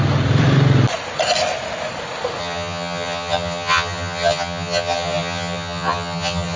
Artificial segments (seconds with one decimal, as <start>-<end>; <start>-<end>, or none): 2.4-6.6